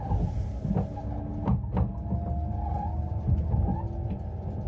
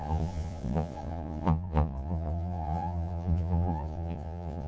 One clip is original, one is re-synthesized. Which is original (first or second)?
first